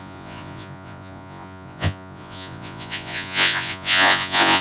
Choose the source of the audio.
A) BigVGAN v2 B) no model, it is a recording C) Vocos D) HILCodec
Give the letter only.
C